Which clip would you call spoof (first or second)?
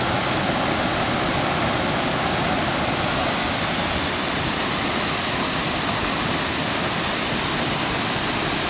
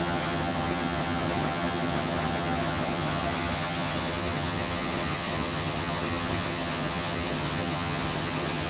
second